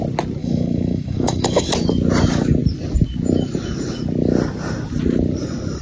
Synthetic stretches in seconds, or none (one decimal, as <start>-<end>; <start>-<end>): 0.4-1.7